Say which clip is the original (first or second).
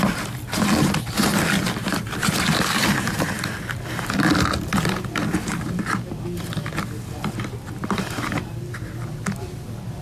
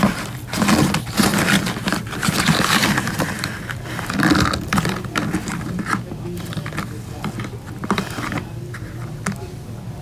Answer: second